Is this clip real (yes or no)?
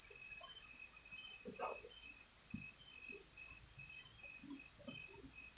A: yes